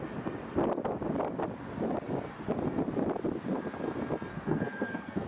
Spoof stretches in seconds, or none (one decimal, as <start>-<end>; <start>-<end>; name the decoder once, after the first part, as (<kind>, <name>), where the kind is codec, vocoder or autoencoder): 4.3-5.3 (codec, SNAC)